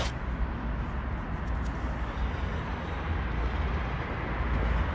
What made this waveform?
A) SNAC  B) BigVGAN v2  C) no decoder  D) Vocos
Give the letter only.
C